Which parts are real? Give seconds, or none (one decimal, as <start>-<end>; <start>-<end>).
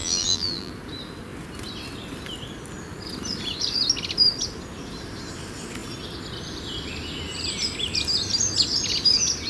0.7-9.5